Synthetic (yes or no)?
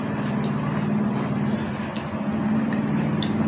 no